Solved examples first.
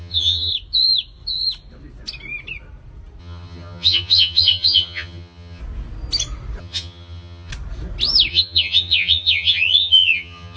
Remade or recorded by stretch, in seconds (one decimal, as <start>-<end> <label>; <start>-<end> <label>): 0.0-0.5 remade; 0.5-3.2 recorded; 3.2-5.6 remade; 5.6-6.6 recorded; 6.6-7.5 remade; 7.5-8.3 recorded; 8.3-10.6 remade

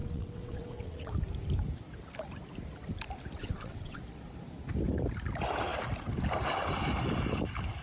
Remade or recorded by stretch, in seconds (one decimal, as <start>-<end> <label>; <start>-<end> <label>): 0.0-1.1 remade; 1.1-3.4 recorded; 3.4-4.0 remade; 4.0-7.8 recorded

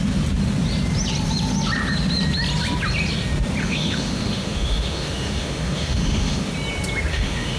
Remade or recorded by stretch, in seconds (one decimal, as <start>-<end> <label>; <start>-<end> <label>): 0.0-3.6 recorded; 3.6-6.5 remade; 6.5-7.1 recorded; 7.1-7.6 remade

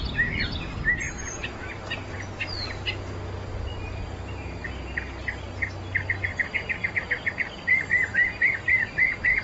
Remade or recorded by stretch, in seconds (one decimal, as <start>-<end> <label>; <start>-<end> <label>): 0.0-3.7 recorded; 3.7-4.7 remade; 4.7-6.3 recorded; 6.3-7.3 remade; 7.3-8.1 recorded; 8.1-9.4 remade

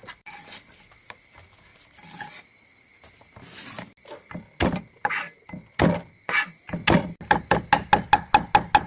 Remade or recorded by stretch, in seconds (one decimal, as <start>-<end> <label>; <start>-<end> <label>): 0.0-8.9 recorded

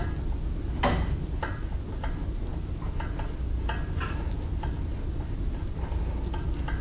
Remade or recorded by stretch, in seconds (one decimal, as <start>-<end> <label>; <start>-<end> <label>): 0.0-6.8 recorded

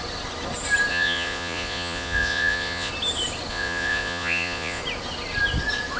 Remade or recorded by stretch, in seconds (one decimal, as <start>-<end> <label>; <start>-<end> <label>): 0.0-0.9 recorded; 0.9-2.9 remade; 2.9-3.5 recorded; 3.5-4.8 remade; 4.8-6.0 recorded

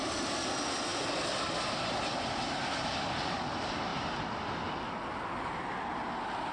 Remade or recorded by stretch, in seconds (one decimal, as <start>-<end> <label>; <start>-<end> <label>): 0.0-6.5 recorded